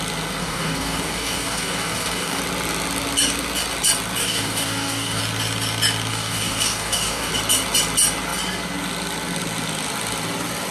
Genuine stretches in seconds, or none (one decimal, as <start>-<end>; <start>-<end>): 0.0-0.4; 2.4-4.2; 5.2-6.1; 7.3-10.7